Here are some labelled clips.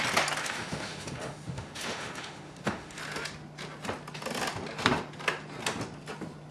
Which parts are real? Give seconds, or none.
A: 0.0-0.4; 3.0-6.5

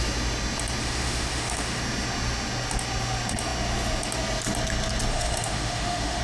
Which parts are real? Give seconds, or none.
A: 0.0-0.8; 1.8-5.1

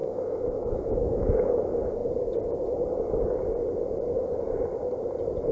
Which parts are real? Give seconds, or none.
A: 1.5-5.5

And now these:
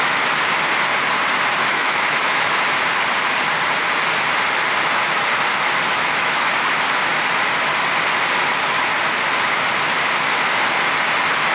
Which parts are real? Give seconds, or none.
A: 0.0-1.7; 2.8-5.9; 6.5-11.5

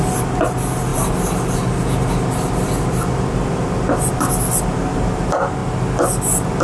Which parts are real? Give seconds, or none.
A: 0.0-6.6